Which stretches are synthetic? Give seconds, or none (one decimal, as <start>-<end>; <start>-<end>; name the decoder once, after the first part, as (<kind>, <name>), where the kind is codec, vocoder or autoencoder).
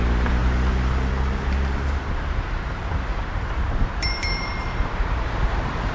0.0-0.4 (vocoder, BigVGAN v2); 2.0-5.9